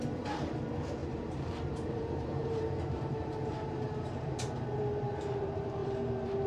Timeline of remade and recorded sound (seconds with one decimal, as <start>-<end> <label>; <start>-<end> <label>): 0.0-1.0 recorded; 1.0-4.8 remade; 4.8-5.8 recorded; 5.8-6.5 remade